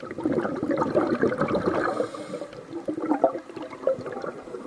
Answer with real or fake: real